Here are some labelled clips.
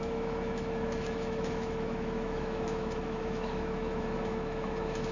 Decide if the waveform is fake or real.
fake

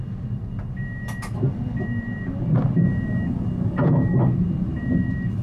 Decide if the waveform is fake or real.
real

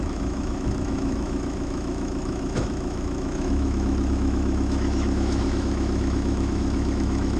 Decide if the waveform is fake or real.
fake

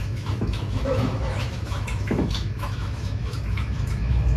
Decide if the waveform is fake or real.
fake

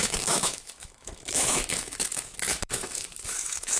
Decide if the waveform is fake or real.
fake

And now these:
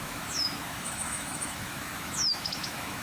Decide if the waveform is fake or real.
fake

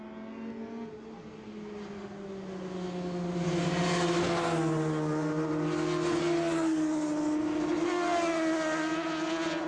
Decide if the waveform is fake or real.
real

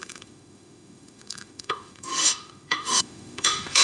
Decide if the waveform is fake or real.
fake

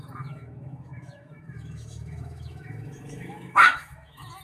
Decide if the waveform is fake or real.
fake